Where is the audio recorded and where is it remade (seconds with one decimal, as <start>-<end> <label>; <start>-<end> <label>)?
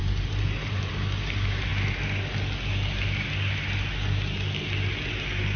0.0-0.9 remade; 0.9-5.6 recorded